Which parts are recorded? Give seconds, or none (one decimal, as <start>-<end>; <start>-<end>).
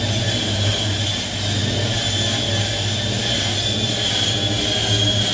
0.0-5.3